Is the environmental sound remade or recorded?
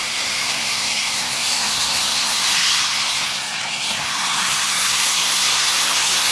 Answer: remade